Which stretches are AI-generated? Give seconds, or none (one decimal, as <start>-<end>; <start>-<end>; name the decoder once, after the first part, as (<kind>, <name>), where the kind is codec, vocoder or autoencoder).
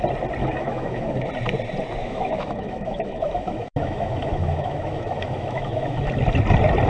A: 0.4-1.3 (autoencoder, DAC-VAE); 2.0-6.1